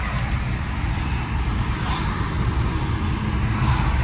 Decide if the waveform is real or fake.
real